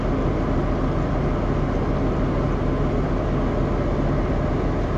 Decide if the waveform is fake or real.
real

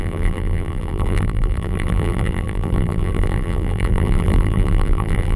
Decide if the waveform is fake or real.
fake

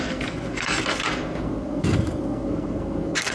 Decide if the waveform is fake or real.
fake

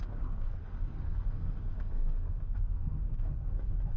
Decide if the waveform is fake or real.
fake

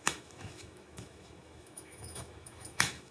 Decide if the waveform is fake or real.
fake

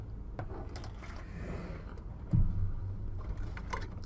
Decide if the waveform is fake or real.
real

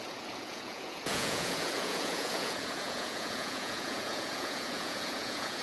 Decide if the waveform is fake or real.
fake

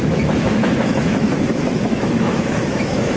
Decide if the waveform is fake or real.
fake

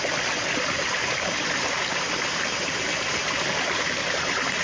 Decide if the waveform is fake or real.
real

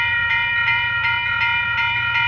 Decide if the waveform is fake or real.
fake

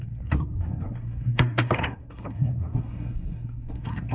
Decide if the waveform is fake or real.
fake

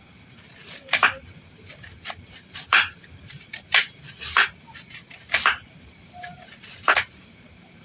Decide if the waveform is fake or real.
fake